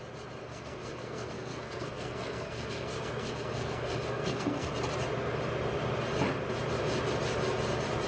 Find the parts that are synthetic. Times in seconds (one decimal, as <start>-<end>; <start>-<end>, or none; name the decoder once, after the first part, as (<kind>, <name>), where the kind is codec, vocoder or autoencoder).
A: 0.4-4.7 (codec, SNAC)